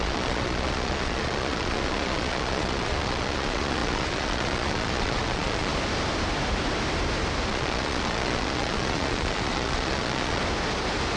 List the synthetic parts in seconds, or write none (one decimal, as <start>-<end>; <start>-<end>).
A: 0.0-5.7; 7.5-10.4